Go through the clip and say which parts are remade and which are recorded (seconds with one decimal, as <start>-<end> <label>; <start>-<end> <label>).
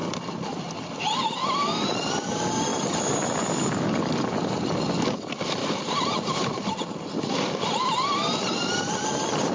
0.0-2.7 recorded; 2.7-3.2 remade; 3.2-5.6 recorded; 5.6-6.7 remade; 6.7-9.5 recorded